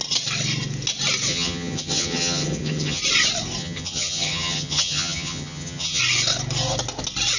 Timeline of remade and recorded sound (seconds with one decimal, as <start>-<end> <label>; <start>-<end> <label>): 0.0-1.3 recorded; 1.3-3.0 remade; 3.0-3.6 recorded; 3.6-6.0 remade; 6.0-7.4 recorded